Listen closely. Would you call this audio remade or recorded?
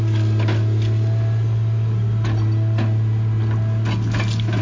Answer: recorded